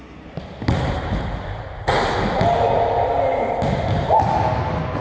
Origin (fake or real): real